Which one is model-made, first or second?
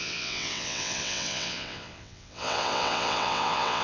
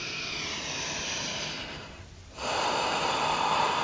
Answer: first